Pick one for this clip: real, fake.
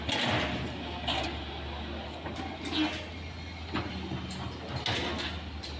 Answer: real